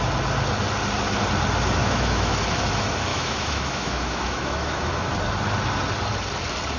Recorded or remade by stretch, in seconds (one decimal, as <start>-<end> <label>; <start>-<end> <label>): 0.0-1.8 recorded; 1.8-2.4 remade; 2.4-3.1 recorded; 3.1-5.1 remade; 5.1-6.8 recorded

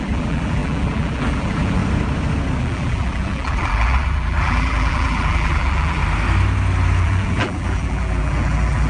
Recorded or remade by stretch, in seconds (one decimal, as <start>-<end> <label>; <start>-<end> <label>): 0.0-1.8 remade; 1.8-2.6 recorded; 2.6-6.0 remade; 6.0-7.0 recorded; 7.0-8.9 remade